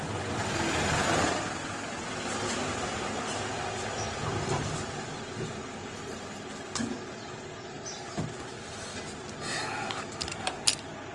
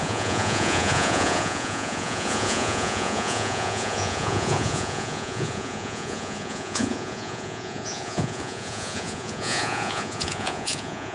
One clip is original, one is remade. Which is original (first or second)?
first